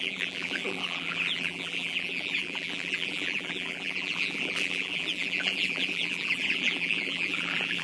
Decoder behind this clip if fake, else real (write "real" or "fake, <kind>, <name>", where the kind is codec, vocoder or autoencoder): fake, vocoder, BigVGAN v2